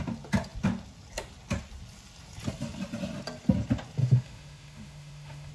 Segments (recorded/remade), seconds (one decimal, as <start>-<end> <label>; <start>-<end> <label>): 0.0-4.0 recorded; 4.0-5.5 remade